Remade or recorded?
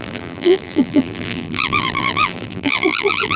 remade